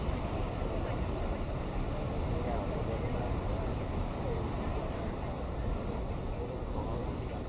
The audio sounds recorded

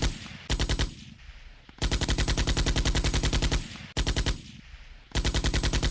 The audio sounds recorded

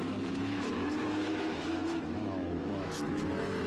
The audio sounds remade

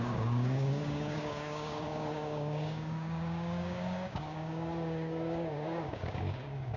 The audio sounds remade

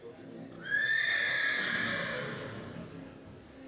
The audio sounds recorded